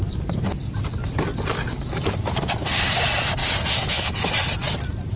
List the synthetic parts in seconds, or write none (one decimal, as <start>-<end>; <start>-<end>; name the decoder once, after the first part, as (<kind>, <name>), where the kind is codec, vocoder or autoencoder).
none

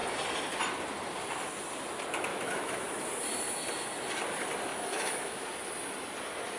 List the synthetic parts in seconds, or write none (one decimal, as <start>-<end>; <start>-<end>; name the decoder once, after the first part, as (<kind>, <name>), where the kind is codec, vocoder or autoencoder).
2.3-3.0 (autoencoder, DAC-VAE); 4.7-5.5

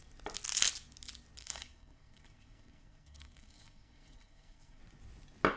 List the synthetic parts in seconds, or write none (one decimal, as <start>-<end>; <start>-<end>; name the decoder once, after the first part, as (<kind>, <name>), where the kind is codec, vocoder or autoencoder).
1.4-4.8 (codec, SNAC)

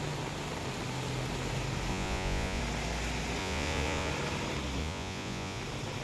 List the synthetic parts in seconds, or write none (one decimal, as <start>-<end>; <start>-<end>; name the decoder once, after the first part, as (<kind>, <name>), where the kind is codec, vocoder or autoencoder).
1.9-2.6 (vocoder, Vocos); 3.4-4.1; 4.8-5.6

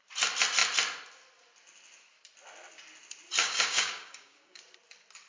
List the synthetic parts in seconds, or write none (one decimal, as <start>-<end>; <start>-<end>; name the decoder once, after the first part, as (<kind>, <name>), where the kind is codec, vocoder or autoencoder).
3.4-4.6 (codec, DAC)

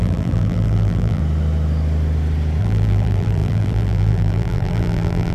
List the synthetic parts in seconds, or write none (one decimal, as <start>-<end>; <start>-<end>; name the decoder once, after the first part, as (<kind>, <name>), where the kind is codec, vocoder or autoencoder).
0.0-1.2 (vocoder, BigVGAN v2); 2.6-5.3

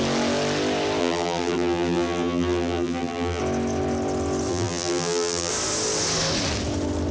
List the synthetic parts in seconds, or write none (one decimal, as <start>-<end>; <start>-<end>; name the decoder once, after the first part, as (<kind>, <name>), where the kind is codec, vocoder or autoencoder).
1.0-3.4 (vocoder, BigVGAN v2); 4.5-5.5

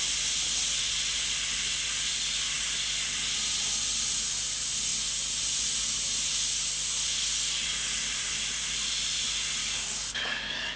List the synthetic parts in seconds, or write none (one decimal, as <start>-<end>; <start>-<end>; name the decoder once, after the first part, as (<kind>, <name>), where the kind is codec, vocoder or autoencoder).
9.6-10.8 (codec, DAC)